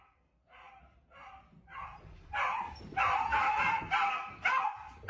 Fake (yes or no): yes